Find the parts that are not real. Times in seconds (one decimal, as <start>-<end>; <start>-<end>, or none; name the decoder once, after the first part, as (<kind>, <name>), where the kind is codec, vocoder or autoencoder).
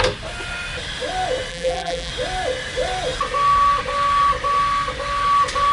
1.5-2.1 (vocoder, BigVGAN v2)